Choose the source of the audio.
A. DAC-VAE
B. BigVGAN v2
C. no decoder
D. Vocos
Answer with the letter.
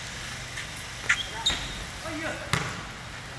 C